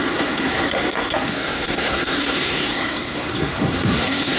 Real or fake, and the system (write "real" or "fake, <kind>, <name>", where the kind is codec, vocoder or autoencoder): fake, codec, SNAC